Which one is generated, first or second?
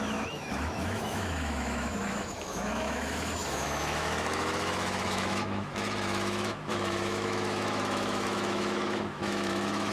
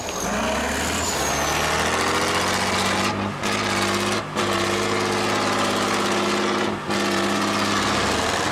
first